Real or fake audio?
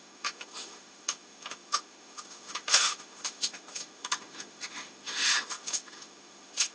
fake